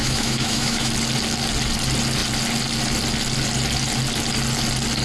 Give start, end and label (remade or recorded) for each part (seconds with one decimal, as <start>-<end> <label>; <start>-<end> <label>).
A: 0.0-0.9 remade; 0.9-5.0 recorded